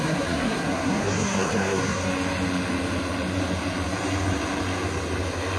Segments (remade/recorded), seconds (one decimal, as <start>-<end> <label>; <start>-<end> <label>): 0.0-2.0 remade; 2.0-5.6 recorded